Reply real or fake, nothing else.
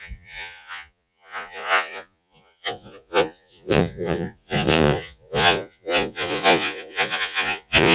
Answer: fake